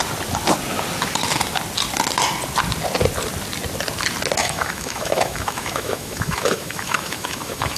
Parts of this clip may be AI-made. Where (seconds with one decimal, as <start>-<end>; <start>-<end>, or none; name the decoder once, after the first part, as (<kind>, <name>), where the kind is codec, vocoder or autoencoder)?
4.4-7.8 (autoencoder, DAC-VAE)